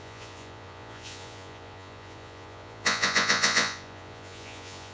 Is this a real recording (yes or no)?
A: no